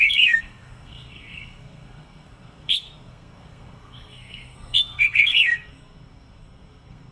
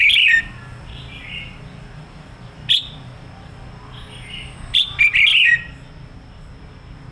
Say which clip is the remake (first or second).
first